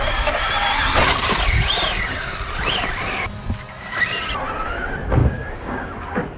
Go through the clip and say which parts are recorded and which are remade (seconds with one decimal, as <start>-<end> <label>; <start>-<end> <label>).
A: 0.0-5.2 recorded; 5.2-5.9 remade; 5.9-6.4 recorded